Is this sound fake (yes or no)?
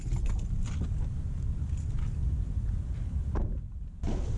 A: yes